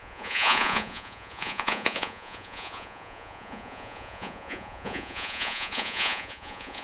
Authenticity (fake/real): fake